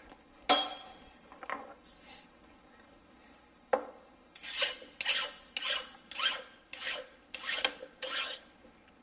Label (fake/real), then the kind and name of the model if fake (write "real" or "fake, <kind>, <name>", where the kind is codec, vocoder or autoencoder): real